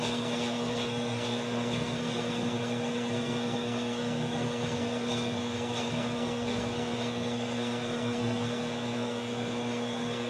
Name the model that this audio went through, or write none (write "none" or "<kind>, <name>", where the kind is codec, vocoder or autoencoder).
codec, SNAC